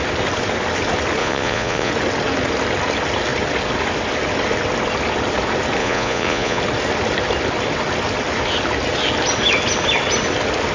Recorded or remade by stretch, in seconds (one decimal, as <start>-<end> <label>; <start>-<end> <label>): 0.0-1.2 recorded; 1.2-1.9 remade; 1.9-5.8 recorded; 5.8-6.6 remade; 6.6-10.7 recorded

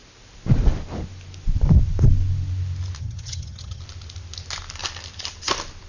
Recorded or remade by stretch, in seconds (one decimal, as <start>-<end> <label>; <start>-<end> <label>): 0.0-3.0 recorded; 3.0-3.8 remade; 3.8-5.9 recorded

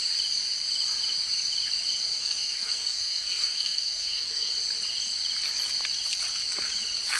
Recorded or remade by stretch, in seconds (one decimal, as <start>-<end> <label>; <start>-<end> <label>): 0.0-2.2 recorded; 2.2-4.5 remade; 4.5-7.2 recorded